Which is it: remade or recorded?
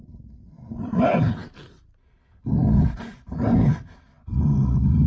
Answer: recorded